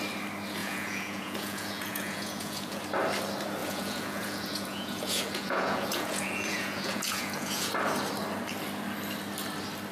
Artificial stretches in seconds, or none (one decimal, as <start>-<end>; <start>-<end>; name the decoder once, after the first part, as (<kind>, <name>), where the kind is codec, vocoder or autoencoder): 0.6-2.8 (vocoder, Vocos); 3.6-7.7